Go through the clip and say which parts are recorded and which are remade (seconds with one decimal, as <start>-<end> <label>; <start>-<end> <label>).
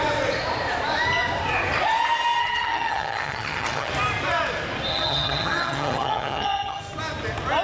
0.0-2.4 recorded; 2.4-3.9 remade; 3.9-4.9 recorded; 4.9-6.8 remade; 6.8-7.6 recorded